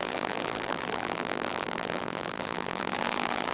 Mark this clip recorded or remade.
remade